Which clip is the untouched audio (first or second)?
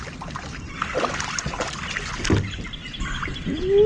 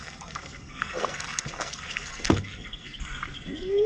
first